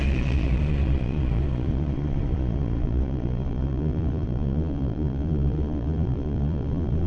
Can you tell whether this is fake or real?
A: fake